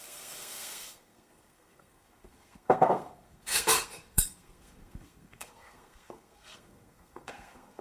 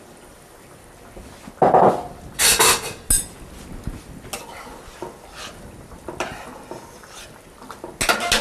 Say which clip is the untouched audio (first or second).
second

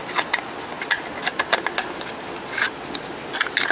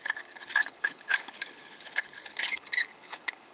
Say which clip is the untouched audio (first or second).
first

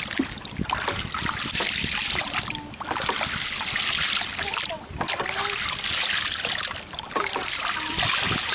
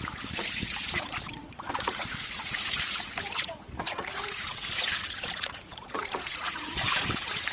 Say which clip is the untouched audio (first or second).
first